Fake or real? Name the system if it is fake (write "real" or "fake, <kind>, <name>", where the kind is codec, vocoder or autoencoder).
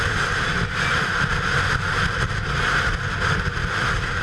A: real